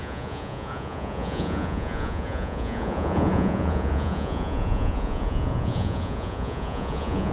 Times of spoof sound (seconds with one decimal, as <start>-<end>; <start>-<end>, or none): 0.0-7.3